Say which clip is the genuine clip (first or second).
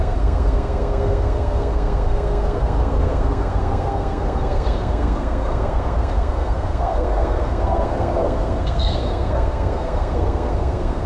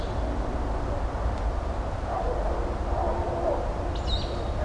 second